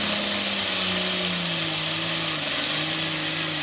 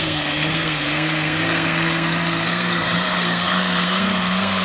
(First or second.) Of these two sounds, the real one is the first